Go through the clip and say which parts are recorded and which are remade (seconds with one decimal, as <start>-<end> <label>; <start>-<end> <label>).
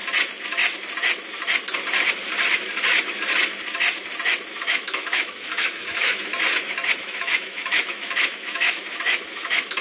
0.0-4.6 recorded; 4.6-6.3 remade; 6.3-7.0 recorded; 7.0-9.8 remade